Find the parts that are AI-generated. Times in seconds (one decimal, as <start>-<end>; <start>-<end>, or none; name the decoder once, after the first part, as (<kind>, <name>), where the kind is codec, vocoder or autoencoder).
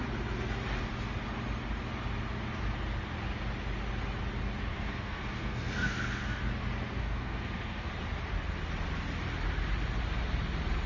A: 4.7-6.4 (codec, SNAC); 7.0-7.9